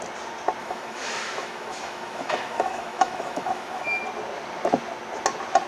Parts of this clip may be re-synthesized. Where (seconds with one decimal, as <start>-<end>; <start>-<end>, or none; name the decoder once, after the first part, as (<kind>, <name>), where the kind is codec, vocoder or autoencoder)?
0.6-4.0 (autoencoder, DAC-VAE)